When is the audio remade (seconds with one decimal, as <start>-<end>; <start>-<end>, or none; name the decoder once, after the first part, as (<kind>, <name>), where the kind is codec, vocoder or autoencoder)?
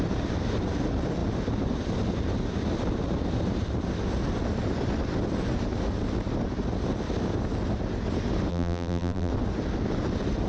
8.5-9.3 (vocoder, BigVGAN v2)